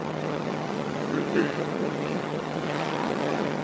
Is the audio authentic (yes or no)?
no